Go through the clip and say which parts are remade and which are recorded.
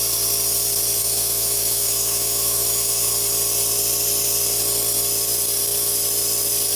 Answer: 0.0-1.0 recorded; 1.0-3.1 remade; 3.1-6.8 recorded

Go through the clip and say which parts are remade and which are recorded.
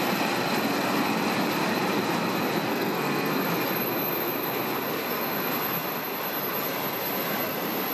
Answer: 0.0-2.7 recorded; 2.7-3.3 remade; 3.3-7.9 recorded